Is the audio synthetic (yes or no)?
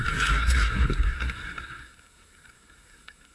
yes